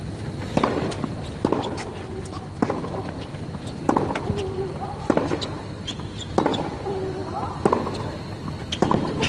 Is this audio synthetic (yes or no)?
no